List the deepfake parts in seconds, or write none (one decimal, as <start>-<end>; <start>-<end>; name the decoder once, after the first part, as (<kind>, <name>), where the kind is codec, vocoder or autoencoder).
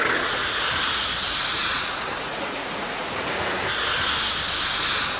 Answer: 0.4-3.5 (vocoder, Vocos)